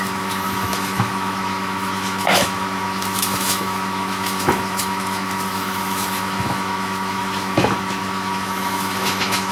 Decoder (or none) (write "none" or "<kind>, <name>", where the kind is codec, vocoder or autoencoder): autoencoder, DAC-VAE